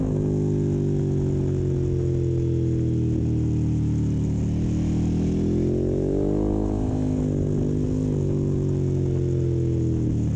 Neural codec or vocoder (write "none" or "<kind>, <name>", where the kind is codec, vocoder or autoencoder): none